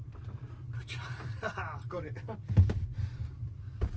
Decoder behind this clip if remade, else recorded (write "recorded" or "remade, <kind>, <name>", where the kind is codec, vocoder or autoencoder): remade, vocoder, BigVGAN v2